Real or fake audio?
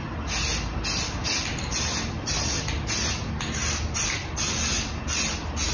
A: real